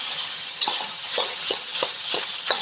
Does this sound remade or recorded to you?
remade